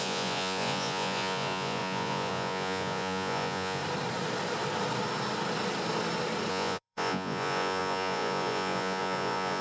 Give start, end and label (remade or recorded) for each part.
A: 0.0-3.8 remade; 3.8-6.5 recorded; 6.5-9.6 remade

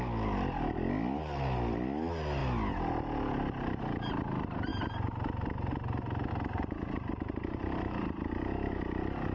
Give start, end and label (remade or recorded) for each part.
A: 0.0-9.3 recorded

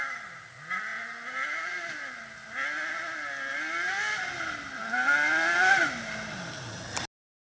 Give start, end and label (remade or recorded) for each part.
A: 0.0-7.5 recorded

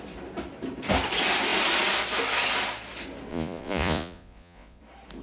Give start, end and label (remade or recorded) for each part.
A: 0.0-3.3 recorded; 3.3-4.8 remade; 4.8-5.2 recorded

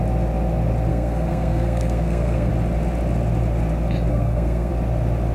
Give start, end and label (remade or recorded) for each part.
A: 0.0-0.9 recorded; 0.9-2.5 remade; 2.5-4.1 recorded; 4.1-4.7 remade; 4.7-5.3 recorded